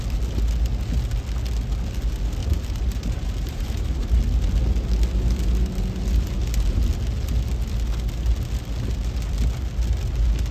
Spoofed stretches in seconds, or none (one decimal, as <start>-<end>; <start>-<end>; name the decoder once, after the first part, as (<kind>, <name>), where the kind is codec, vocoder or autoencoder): 2.4-4.2 (vocoder, BigVGAN v2)